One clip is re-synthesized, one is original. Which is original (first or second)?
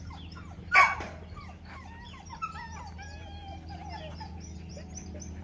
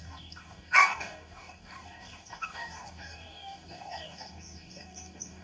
first